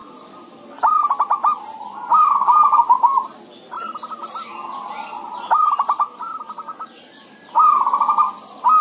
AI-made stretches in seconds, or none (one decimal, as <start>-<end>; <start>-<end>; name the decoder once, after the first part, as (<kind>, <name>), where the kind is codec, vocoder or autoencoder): none